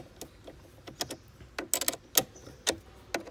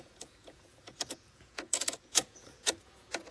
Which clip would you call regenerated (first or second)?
second